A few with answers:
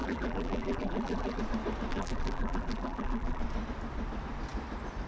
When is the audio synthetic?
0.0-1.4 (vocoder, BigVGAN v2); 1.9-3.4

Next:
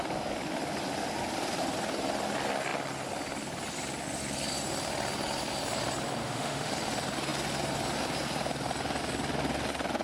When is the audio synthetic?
6.2-6.7 (autoencoder, DAC-VAE)

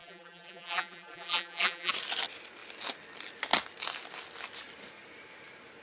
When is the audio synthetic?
0.0-1.9 (vocoder, BigVGAN v2)

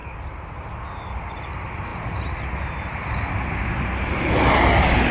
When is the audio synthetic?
0.0-0.6 (vocoder, BigVGAN v2)

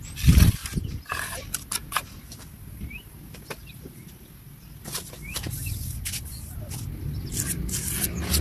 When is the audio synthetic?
none

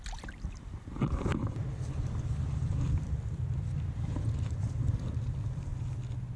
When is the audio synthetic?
0.0-5.7 (vocoder, BigVGAN v2)

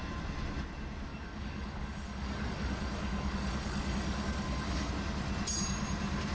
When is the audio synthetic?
1.1-4.9 (codec, DAC)